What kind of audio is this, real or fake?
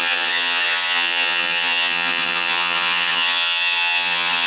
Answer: fake